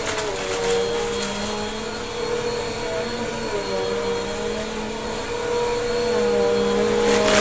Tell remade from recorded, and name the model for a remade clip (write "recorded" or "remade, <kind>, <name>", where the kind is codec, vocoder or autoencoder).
recorded